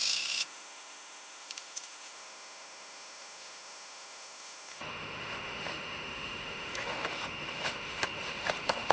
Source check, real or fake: fake